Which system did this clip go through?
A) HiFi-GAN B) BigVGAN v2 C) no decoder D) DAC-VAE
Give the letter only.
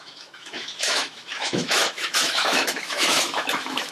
D